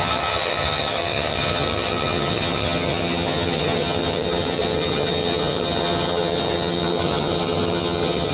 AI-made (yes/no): yes